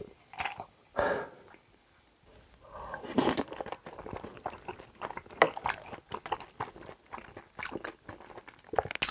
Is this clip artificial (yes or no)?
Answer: no